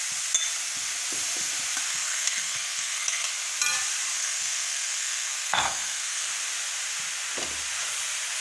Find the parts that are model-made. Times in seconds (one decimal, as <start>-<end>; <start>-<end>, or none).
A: 1.9-3.3; 4.2-6.3